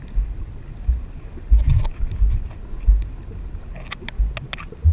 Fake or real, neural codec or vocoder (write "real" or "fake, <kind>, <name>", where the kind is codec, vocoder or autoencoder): real